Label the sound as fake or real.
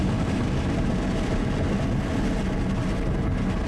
real